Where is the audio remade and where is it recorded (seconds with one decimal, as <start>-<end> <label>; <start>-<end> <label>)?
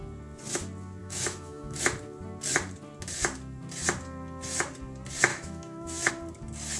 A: 0.0-1.0 recorded; 1.0-1.8 remade; 1.8-5.3 recorded; 5.3-6.1 remade; 6.1-6.8 recorded